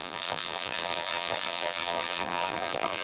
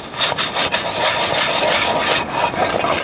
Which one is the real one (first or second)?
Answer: second